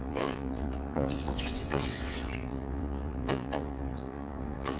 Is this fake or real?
fake